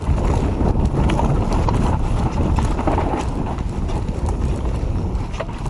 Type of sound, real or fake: real